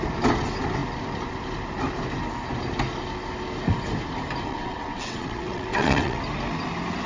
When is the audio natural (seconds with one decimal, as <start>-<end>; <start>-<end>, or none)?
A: 0.0-4.5; 6.2-7.1